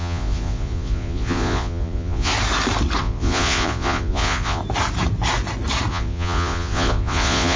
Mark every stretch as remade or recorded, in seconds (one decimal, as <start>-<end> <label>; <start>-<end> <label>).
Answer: 0.0-2.3 remade; 2.3-3.0 recorded; 3.0-4.6 remade; 4.6-5.9 recorded; 5.9-7.6 remade